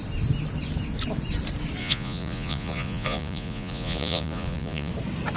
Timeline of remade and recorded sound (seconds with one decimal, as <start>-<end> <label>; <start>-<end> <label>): 0.0-1.8 recorded; 1.8-4.9 remade; 4.9-5.4 recorded